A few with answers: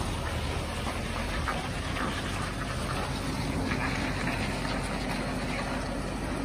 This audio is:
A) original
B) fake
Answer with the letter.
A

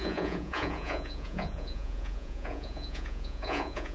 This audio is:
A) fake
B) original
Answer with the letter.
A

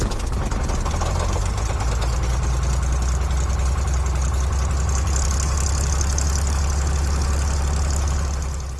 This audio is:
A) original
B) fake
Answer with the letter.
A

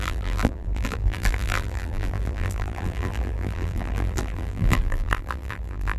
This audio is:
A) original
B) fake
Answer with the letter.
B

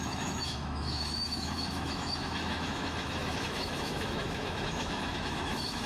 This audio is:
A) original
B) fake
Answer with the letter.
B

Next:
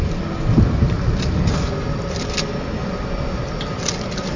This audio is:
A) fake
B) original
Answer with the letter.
B